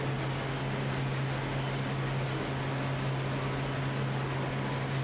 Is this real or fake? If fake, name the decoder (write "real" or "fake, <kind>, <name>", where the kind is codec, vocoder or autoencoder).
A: real